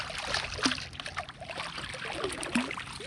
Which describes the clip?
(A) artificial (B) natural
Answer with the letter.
B